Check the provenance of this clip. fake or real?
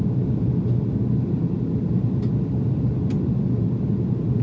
real